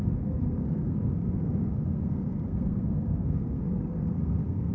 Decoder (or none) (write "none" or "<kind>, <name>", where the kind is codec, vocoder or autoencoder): codec, SNAC